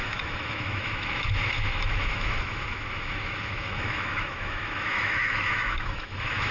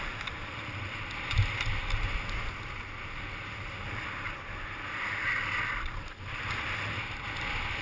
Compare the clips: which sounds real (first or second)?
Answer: second